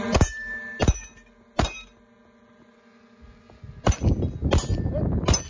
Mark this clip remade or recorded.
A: recorded